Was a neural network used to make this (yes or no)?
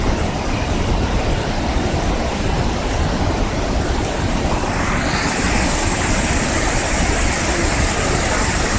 no